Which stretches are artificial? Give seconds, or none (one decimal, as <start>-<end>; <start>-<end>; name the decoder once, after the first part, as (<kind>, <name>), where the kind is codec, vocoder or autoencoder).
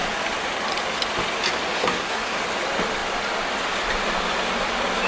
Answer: 1.7-2.4 (codec, SNAC)